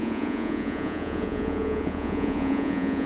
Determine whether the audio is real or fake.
fake